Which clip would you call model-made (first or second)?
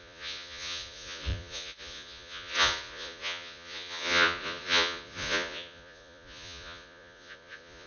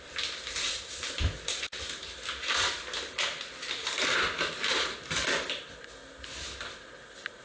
first